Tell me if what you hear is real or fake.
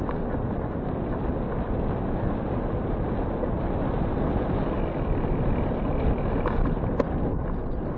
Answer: real